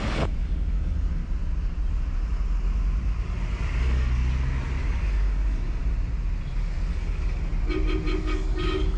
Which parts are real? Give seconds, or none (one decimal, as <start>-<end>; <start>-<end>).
1.2-3.8; 4.2-4.8; 5.8-6.9; 7.5-8.2